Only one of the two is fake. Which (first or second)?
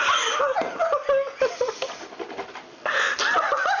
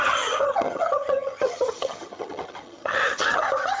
second